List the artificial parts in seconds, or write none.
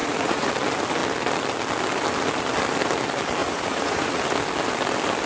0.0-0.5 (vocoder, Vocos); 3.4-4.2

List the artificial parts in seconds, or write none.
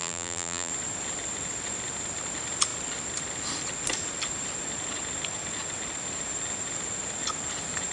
0.0-0.7 (vocoder, BigVGAN v2)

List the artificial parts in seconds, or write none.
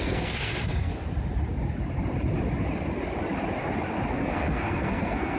0.0-0.9 (codec, SNAC); 4.1-5.4